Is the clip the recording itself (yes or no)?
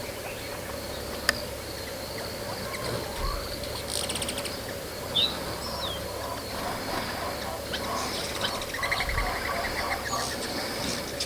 yes